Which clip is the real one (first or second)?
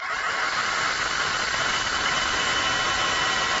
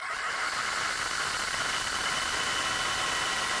first